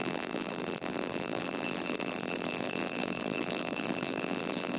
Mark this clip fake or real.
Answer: fake